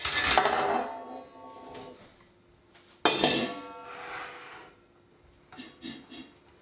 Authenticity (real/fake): real